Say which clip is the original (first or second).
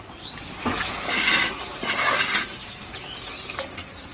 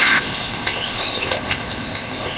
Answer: first